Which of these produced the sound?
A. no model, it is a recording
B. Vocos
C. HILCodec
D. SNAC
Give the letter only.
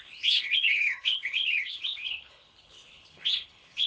C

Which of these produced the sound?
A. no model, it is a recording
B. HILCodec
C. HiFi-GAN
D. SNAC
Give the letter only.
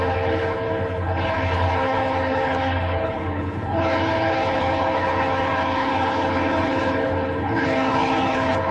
B